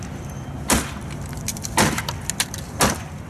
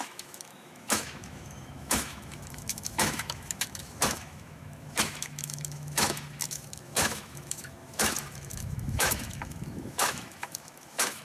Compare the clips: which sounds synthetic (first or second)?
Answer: second